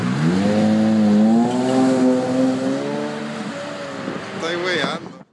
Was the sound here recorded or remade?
recorded